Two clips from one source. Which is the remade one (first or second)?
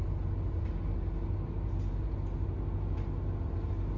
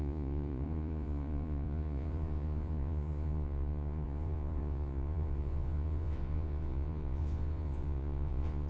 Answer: second